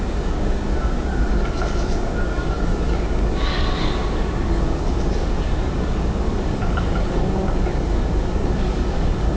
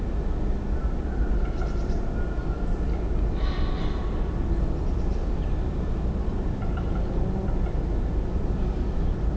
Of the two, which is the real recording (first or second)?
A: second